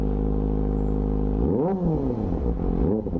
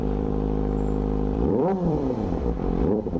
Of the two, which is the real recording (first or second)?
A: first